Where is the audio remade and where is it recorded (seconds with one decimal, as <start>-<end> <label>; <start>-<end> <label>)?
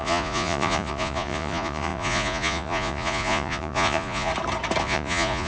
0.0-4.3 remade; 4.3-4.8 recorded; 4.8-5.5 remade